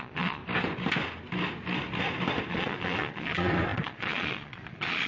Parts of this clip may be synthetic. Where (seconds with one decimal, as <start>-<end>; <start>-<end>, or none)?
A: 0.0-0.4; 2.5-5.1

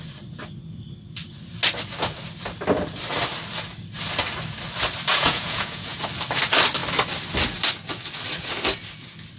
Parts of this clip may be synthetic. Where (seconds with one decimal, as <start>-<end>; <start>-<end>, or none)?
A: 5.1-6.0

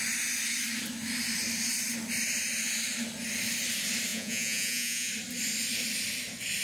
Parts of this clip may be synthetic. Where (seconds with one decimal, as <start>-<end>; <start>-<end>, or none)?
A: 4.1-5.1